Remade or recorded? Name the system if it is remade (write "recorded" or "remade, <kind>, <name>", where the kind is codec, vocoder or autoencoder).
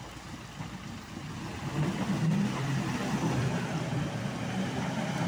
recorded